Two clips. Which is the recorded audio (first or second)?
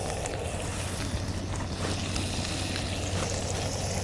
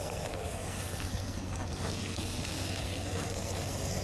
first